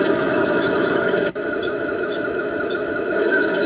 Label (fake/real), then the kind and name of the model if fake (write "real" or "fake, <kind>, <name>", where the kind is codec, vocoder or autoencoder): fake, autoencoder, DAC-VAE